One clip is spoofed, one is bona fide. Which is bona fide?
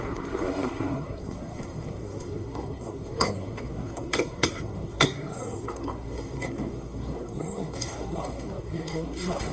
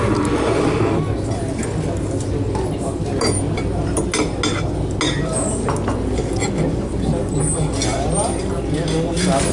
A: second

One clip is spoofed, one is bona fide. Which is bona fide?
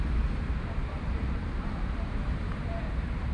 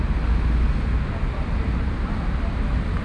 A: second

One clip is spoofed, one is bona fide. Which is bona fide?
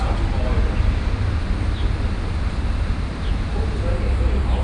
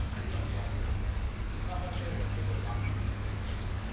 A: first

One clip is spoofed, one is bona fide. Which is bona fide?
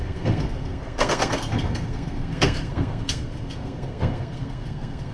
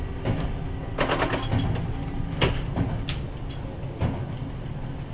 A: second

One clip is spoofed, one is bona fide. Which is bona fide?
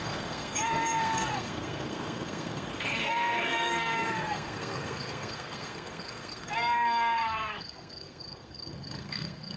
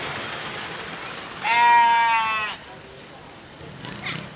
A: second